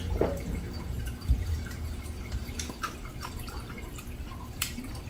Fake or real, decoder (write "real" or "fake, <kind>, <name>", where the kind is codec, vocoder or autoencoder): fake, vocoder, BigVGAN v2